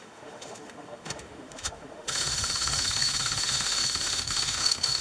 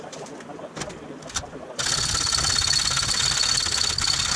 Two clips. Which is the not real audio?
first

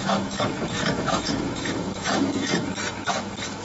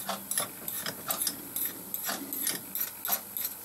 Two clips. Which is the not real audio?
first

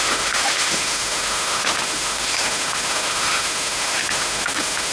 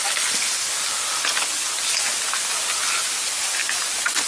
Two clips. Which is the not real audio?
first